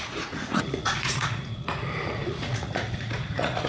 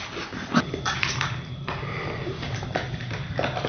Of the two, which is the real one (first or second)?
second